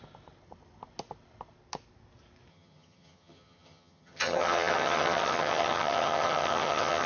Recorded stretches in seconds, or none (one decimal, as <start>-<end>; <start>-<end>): 0.0-2.5